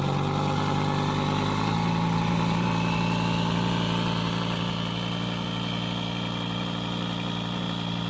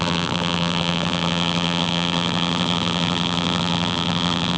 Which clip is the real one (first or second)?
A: first